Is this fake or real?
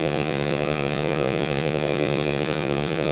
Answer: fake